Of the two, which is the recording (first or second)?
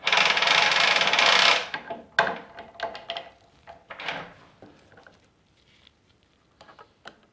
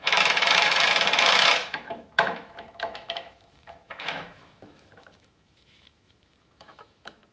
first